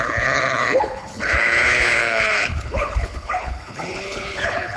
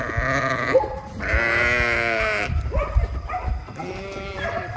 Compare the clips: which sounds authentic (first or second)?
second